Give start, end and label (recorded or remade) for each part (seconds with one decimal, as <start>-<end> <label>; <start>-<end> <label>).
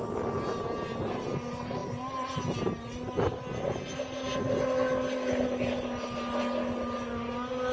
0.0-7.7 recorded